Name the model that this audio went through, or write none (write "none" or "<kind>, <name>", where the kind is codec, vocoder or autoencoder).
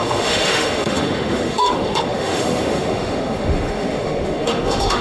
autoencoder, DAC-VAE